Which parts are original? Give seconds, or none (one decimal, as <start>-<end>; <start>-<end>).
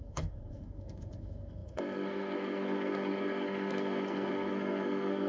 none